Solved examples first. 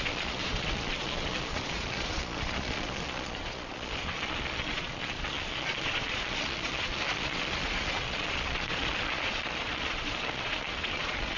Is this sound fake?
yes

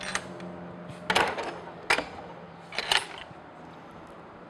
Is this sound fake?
no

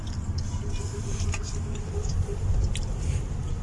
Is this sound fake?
no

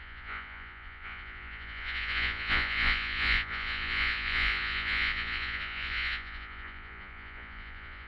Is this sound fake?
yes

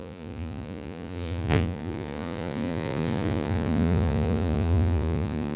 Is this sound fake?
yes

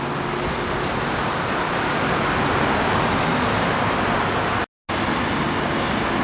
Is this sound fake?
no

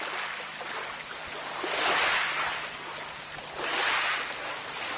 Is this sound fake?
no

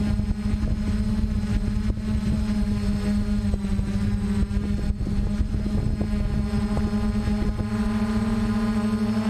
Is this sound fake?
no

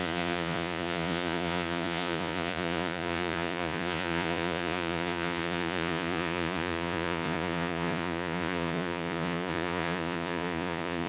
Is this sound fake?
yes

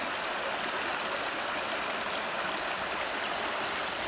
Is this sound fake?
no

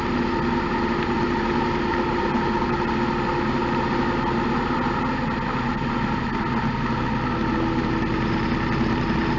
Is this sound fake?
no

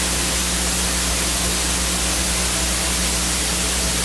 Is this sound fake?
no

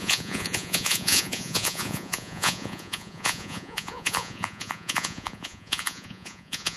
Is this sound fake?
yes